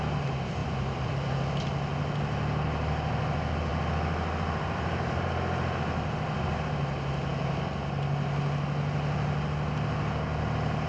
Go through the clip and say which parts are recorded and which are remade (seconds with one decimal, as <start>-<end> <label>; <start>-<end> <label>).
0.0-0.6 recorded; 0.6-1.5 remade; 1.5-3.7 recorded; 3.7-5.3 remade; 5.3-10.9 recorded